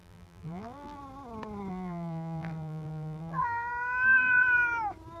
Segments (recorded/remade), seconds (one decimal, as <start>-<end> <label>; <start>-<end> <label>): 0.0-1.0 remade; 1.0-1.7 recorded; 1.7-3.7 remade; 3.7-5.2 recorded